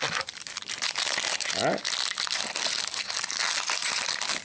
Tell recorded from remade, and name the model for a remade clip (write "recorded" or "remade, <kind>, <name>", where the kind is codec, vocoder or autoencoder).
recorded